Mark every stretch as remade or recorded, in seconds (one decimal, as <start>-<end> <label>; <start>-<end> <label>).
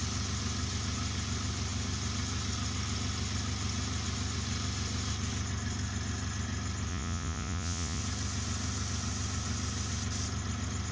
0.0-6.9 recorded; 6.9-8.0 remade; 8.0-10.9 recorded